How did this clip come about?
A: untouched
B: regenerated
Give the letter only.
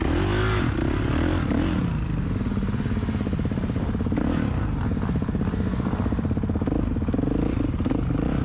A